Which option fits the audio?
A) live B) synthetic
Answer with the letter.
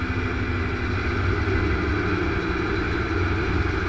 A